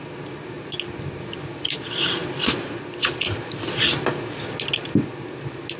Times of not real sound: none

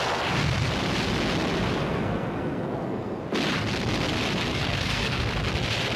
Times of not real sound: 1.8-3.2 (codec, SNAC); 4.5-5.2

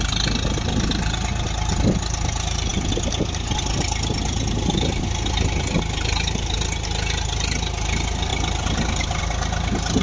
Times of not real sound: none

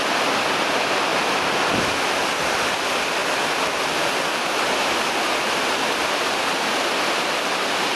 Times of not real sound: none